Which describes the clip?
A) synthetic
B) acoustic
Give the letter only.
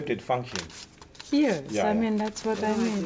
B